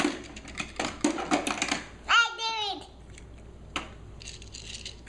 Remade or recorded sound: recorded